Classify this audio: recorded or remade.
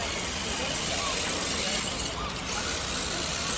recorded